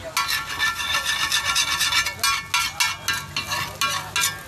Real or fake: real